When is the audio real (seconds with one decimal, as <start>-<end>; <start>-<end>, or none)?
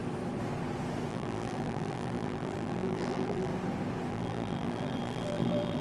0.0-1.1; 3.5-4.1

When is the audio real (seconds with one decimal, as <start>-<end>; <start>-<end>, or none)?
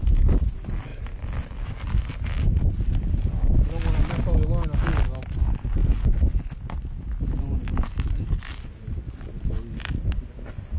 0.0-10.8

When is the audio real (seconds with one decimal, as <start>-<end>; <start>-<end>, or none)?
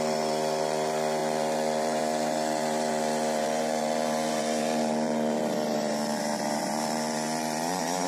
none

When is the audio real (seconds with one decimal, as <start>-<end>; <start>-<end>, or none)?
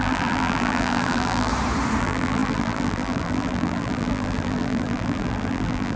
1.5-2.0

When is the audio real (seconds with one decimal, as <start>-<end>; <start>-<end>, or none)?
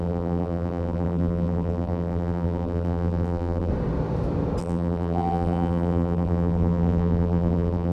3.7-4.6